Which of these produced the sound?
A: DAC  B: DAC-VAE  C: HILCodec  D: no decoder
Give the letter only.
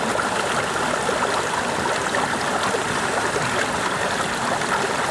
D